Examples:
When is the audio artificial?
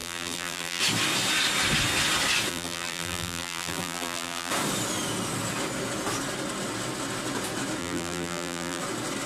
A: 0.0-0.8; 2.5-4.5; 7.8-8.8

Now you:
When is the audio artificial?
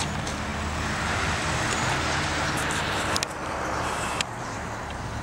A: 3.4-4.6